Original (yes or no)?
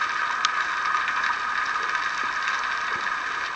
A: yes